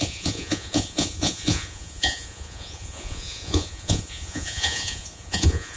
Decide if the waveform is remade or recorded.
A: remade